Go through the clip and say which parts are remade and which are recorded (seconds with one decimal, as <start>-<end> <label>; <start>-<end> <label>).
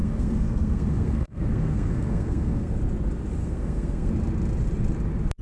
0.0-2.8 remade; 2.8-3.4 recorded; 3.4-4.1 remade; 4.1-5.4 recorded